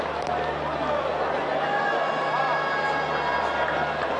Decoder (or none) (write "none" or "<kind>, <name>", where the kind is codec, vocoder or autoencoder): none